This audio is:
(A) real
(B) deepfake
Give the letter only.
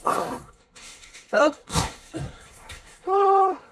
B